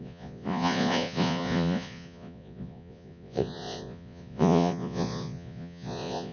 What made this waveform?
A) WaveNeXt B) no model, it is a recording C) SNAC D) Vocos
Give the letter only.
D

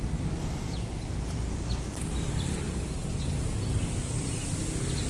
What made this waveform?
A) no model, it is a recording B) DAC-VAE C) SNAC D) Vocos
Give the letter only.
A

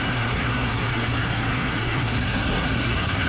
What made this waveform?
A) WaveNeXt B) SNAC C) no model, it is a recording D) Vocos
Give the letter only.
B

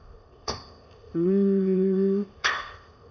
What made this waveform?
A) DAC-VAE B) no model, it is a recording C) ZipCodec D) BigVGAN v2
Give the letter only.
C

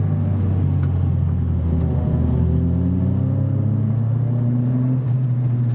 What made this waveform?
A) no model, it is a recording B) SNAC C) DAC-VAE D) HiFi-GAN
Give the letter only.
A